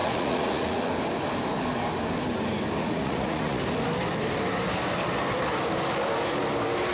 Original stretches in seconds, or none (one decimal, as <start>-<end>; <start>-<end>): 0.9-2.8; 3.6-6.9